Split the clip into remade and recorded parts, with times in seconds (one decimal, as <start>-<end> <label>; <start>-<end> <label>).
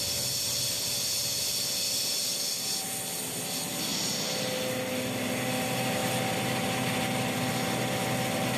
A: 0.0-8.6 recorded